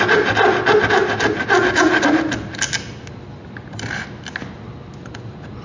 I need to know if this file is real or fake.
real